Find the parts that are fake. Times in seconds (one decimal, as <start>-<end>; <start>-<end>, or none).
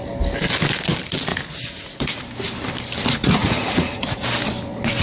1.3-2.2; 3.2-4.2